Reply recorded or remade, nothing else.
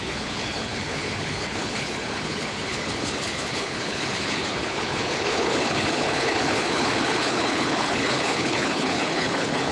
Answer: remade